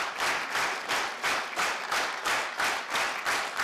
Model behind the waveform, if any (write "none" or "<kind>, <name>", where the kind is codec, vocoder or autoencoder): none